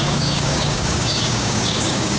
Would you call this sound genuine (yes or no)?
no